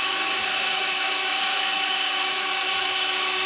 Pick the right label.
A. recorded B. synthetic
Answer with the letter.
B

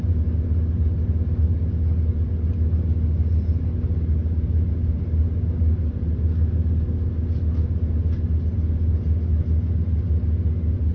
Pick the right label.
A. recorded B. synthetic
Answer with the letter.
A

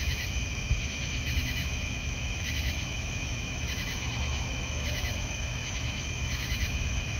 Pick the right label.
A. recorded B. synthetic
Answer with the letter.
B